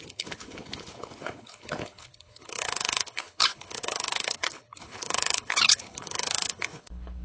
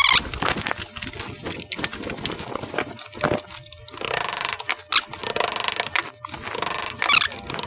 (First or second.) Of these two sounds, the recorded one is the second